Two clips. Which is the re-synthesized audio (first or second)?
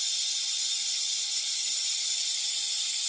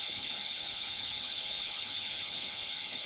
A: second